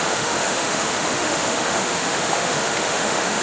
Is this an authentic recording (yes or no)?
no